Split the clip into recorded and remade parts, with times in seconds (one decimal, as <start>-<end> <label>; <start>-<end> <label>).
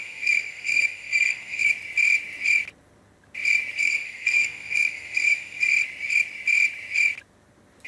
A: 0.0-1.7 remade; 1.7-3.8 recorded; 3.8-5.7 remade; 5.7-7.9 recorded